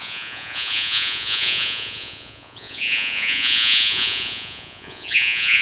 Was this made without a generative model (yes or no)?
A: no